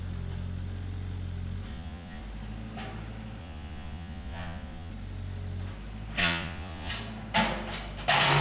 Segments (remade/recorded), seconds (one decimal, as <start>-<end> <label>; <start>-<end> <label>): 0.0-1.7 recorded; 1.7-2.2 remade; 2.2-3.4 recorded; 3.4-4.9 remade; 4.9-6.2 recorded; 6.2-6.9 remade; 6.9-8.4 recorded